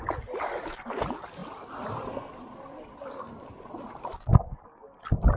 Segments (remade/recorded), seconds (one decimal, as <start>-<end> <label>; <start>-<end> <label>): 0.0-5.4 recorded